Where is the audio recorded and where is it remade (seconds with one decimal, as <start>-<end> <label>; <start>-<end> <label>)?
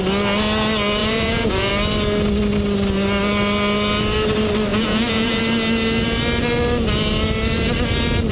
0.0-1.0 recorded; 1.0-1.7 remade; 1.7-4.7 recorded; 4.7-5.4 remade; 5.4-8.3 recorded